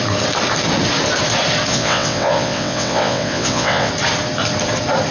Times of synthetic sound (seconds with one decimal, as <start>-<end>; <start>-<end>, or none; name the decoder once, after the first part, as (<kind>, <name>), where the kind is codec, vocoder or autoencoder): 1.7-3.9 (vocoder, WaveNeXt)